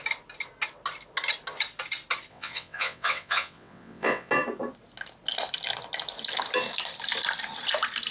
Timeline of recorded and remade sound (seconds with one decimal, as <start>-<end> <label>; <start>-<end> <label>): 0.0-2.3 recorded; 2.3-4.3 remade; 4.3-8.1 recorded